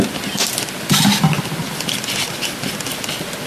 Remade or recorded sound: recorded